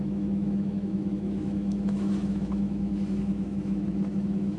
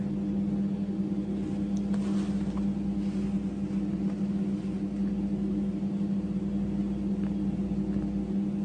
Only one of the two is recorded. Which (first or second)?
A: second